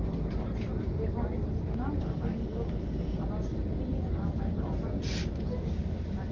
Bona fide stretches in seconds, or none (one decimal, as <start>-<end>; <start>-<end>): 0.0-6.3